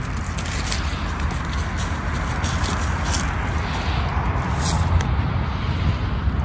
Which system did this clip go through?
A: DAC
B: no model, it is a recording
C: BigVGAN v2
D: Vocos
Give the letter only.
B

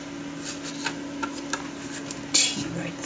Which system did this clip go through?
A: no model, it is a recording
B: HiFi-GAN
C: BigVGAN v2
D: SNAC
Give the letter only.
A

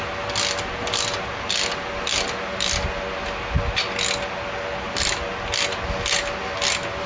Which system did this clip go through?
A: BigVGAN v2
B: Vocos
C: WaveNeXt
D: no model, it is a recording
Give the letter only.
D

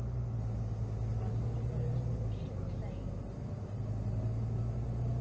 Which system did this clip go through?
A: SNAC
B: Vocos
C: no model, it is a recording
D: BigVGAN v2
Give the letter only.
C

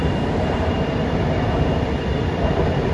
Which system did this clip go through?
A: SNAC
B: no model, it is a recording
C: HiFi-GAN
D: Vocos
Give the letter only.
B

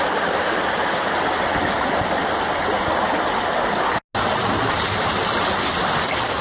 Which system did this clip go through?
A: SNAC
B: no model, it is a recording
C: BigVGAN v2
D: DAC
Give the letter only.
B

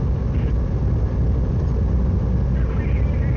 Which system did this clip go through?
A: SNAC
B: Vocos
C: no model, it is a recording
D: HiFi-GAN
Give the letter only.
C